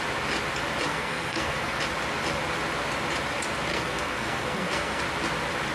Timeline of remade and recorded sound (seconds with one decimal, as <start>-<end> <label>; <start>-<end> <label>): 0.0-0.9 recorded; 0.9-1.8 remade; 1.8-3.7 recorded; 3.7-5.0 remade; 5.0-5.7 recorded